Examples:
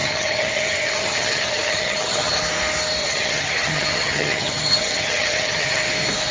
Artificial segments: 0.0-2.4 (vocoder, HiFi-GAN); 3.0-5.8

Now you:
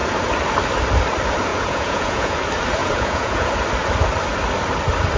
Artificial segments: 1.5-2.4 (vocoder, Vocos); 2.8-3.5

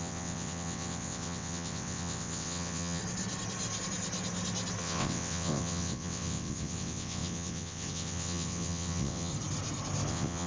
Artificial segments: 0.0-3.0 (vocoder, WaveNeXt); 4.8-9.3; 10.1-10.5

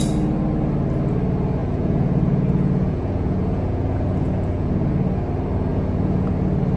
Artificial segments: 1.6-4.9 (vocoder, Vocos); 5.7-6.3

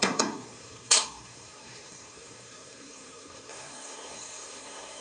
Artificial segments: 0.0-5.0 (codec, SNAC)

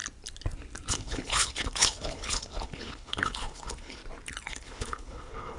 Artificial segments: 0.9-4.0 (codec, HILCodec); 4.5-5.6

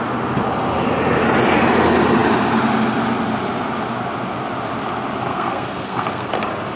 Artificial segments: 5.3-6.3 (codec, SNAC)